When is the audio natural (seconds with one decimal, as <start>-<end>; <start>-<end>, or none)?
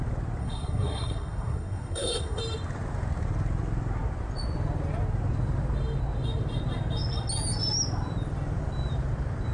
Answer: 0.0-0.4; 2.4-9.5